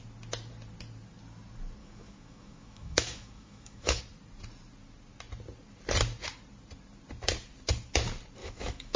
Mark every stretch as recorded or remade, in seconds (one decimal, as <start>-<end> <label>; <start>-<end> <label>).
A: 0.0-1.8 recorded; 1.8-4.0 remade; 4.0-8.4 recorded; 8.4-9.0 remade